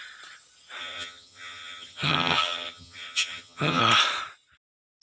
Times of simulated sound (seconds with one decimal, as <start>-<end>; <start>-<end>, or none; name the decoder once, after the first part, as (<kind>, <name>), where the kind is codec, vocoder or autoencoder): 0.8-3.8 (vocoder, HiFi-GAN)